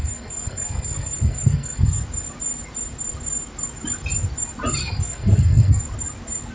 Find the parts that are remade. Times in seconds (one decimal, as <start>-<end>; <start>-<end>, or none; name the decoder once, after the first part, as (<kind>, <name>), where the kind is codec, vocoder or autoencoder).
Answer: 0.0-2.0 (codec, SNAC); 4.8-5.8